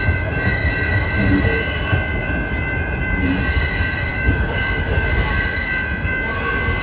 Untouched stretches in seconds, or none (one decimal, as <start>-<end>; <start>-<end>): 0.0-0.9; 1.4-4.1; 5.6-6.8